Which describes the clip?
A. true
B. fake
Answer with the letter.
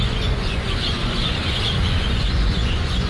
B